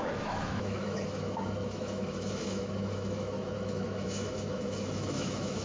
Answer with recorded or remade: remade